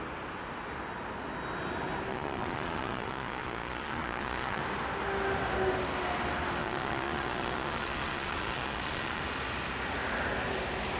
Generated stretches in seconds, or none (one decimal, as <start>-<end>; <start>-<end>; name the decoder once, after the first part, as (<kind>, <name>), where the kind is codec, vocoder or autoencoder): 2.1-4.6 (vocoder, Vocos); 6.6-9.2